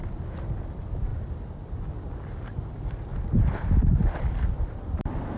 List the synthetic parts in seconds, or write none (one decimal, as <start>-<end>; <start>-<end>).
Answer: 1.1-1.9; 3.1-5.0